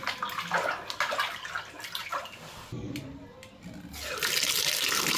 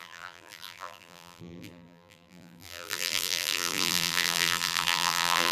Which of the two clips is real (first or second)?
first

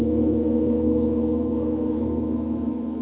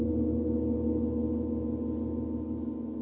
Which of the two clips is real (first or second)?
second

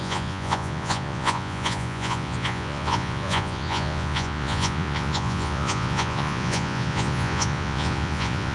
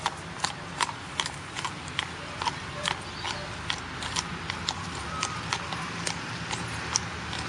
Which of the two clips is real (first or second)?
second